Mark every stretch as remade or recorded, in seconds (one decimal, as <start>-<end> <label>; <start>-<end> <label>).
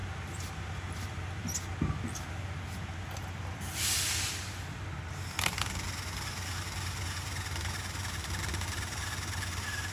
0.0-9.9 recorded